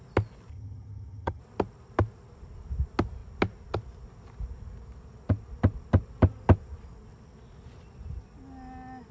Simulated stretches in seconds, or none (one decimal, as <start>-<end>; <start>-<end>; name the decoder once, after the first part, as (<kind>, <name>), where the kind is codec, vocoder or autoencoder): 0.5-1.4 (vocoder, HiFi-GAN)